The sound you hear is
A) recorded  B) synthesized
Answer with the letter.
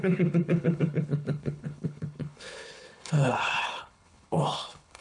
B